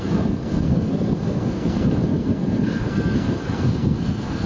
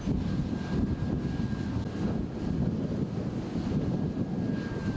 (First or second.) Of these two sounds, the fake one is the first